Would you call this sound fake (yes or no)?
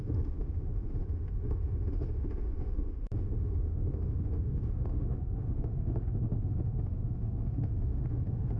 yes